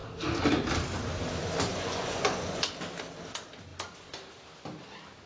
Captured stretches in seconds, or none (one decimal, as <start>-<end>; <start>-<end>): 0.0-1.7; 2.6-5.3